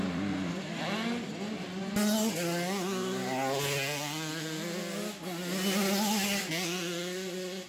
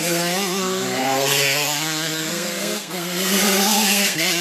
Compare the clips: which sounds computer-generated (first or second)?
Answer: second